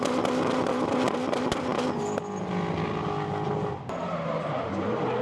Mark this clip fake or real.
real